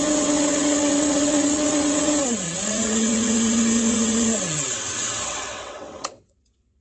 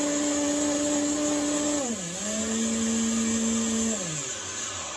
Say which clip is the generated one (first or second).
first